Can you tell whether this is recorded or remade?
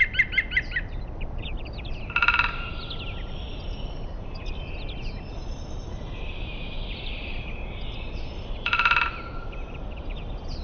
recorded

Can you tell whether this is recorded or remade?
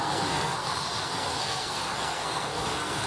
remade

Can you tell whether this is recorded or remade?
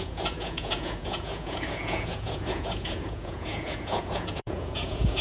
remade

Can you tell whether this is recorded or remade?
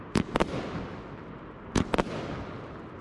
remade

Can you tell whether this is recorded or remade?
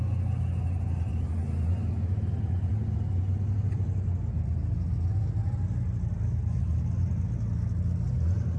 recorded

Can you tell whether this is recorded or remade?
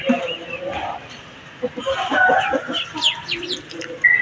recorded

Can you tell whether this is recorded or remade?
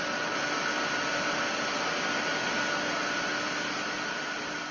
recorded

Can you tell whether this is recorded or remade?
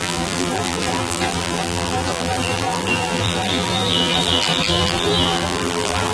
remade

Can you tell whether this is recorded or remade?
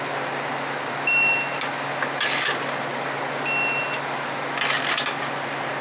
recorded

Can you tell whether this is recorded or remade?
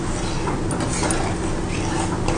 recorded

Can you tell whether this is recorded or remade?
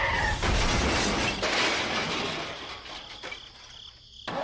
recorded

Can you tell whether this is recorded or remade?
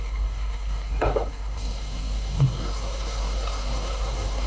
remade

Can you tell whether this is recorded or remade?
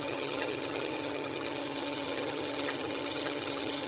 remade